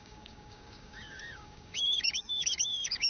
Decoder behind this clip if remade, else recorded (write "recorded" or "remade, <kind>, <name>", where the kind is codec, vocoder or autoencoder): remade, codec, DAC